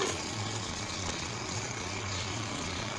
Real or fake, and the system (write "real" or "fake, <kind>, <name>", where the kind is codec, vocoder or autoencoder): fake, vocoder, Vocos